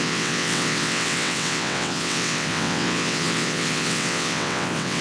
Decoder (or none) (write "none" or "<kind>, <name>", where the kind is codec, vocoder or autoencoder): vocoder, WaveNeXt